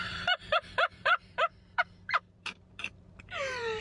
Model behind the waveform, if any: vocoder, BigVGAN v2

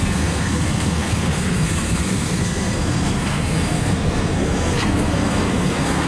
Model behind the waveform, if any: codec, SNAC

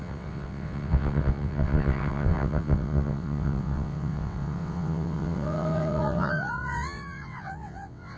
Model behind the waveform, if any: vocoder, WaveNeXt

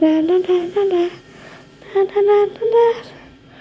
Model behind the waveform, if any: vocoder, Vocos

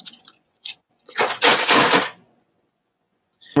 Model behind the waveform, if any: vocoder, Vocos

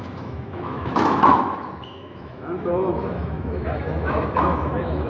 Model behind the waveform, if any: autoencoder, DAC-VAE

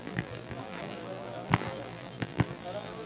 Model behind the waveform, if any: vocoder, BigVGAN v2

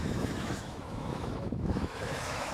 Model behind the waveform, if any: autoencoder, DAC-VAE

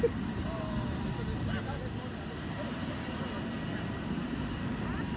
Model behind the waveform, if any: none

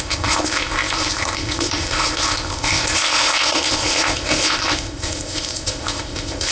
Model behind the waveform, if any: codec, ZipCodec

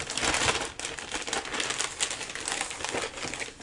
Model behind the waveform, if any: none